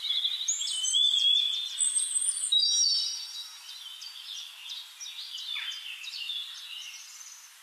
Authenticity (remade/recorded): recorded